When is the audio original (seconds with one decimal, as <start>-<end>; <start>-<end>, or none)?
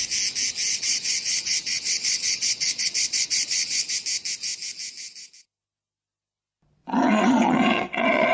0.0-0.7; 3.9-6.8